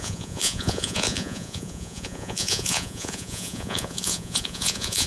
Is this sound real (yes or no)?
no